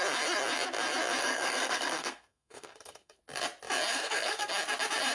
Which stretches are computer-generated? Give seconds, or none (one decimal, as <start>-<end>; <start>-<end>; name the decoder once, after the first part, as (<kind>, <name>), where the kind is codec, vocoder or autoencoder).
1.2-3.2 (codec, SNAC); 3.9-4.5